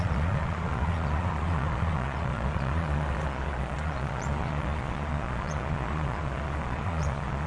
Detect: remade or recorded remade